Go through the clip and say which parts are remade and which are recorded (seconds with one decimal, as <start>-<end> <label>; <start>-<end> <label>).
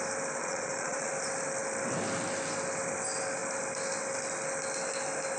0.0-0.4 recorded; 0.4-1.1 remade; 1.1-5.4 recorded